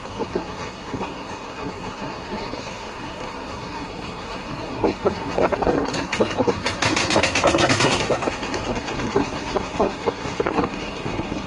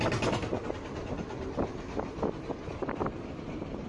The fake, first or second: first